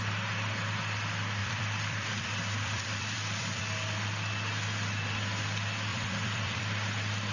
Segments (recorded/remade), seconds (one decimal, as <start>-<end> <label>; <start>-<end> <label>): 0.0-1.4 recorded; 1.4-3.6 remade; 3.6-5.9 recorded; 5.9-6.6 remade; 6.6-7.3 recorded